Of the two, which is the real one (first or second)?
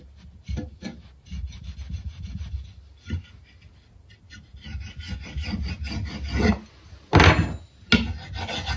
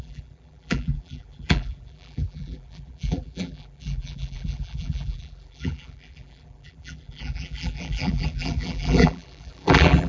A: first